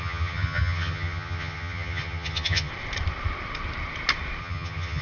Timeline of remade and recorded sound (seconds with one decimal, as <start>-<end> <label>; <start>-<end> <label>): 0.0-2.7 remade; 2.7-4.4 recorded; 4.4-5.0 remade